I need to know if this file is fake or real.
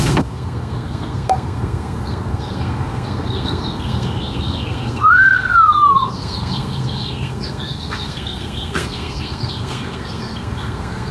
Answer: fake